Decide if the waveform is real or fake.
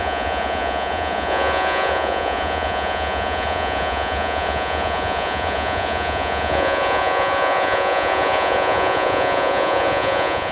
fake